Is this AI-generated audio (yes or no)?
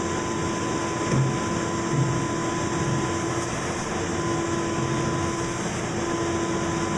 no